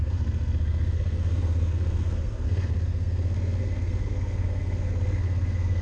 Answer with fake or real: fake